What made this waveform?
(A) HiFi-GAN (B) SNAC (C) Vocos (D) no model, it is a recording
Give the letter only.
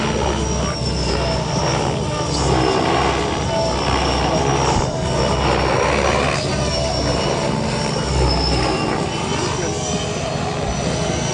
D